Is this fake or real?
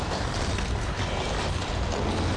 real